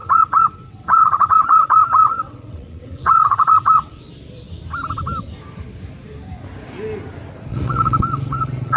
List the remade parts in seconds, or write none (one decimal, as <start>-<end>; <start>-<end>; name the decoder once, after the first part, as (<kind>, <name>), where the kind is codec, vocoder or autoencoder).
0.0-4.1 (vocoder, WaveNeXt); 7.5-8.8